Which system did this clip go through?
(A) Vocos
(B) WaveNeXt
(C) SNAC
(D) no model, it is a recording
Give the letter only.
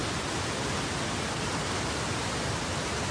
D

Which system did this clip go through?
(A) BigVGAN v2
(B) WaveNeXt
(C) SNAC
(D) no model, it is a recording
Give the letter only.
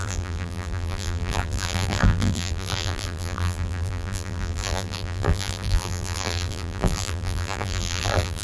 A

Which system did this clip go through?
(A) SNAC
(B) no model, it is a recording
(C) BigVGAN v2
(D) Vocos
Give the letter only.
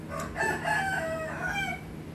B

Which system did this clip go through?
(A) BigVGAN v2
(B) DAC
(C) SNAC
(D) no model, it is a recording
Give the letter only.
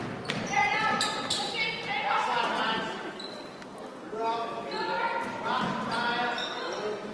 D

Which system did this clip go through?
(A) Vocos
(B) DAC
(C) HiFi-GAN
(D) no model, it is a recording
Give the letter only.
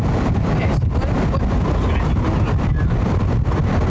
D